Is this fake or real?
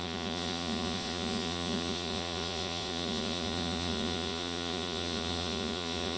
fake